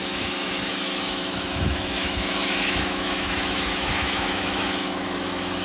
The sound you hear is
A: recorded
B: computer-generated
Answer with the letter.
B